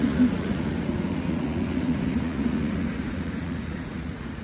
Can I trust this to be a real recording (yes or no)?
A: no